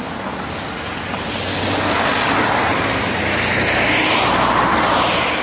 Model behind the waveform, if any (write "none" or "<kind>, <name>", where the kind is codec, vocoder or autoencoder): none